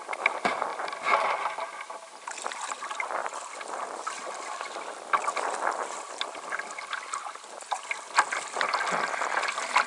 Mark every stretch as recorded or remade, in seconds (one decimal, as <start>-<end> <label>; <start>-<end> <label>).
0.0-9.9 recorded